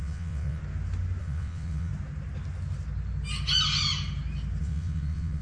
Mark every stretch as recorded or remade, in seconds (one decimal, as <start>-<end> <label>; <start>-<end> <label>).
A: 0.0-0.6 remade; 0.6-1.2 recorded; 1.2-1.9 remade; 1.9-4.6 recorded; 4.6-5.4 remade